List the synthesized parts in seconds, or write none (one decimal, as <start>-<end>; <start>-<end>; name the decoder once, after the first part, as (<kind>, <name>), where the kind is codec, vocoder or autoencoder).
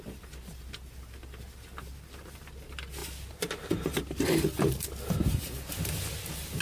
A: none